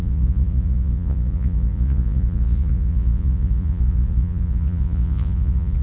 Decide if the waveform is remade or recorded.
remade